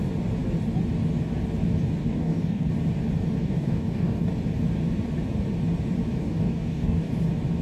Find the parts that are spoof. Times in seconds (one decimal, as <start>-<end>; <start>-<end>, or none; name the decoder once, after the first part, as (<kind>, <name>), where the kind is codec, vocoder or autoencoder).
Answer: 2.0-2.7 (codec, DAC); 3.4-4.3; 6.2-7.1